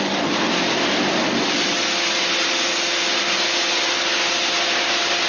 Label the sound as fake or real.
real